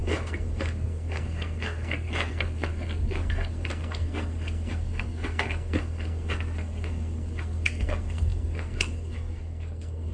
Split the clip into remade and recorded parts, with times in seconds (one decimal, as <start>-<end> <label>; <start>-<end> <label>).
0.0-10.1 remade